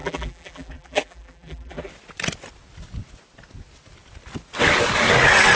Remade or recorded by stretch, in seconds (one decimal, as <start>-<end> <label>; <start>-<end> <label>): 0.0-1.9 remade; 1.9-5.6 recorded